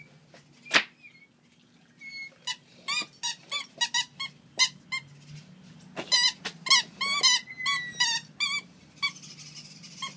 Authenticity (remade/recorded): recorded